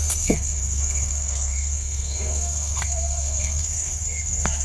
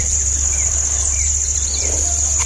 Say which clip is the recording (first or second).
second